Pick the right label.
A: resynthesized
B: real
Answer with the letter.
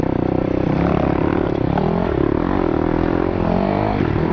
A